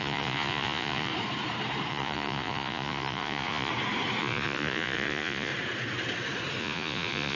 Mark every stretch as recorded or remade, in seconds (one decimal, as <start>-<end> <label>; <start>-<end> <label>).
0.0-1.1 remade; 1.1-1.9 recorded; 1.9-3.7 remade; 3.7-4.2 recorded; 4.2-5.5 remade; 5.5-6.6 recorded; 6.6-7.3 remade